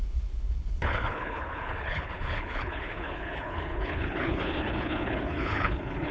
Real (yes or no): no